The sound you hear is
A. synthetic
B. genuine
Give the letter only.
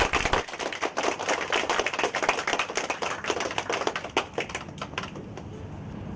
B